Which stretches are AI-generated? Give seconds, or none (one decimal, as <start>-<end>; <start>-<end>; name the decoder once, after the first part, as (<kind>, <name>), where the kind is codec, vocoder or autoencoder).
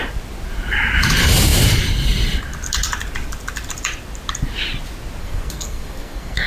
5.2-6.5 (codec, SNAC)